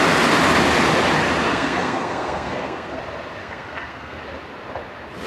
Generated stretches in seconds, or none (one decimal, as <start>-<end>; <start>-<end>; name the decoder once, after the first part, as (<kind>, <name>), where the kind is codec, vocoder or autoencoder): 1.5-3.0 (codec, SNAC); 3.4-4.2